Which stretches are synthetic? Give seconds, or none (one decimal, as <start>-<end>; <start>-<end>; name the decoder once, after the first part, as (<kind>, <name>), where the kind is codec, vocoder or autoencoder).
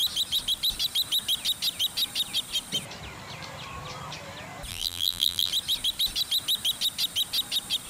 4.7-5.5 (vocoder, BigVGAN v2)